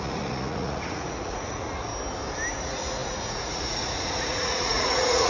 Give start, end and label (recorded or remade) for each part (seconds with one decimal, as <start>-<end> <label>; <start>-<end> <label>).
0.0-1.9 remade; 1.9-2.6 recorded; 2.6-5.3 remade